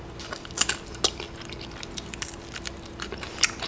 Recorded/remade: recorded